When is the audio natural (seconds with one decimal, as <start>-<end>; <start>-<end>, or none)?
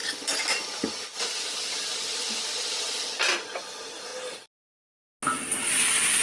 0.0-6.2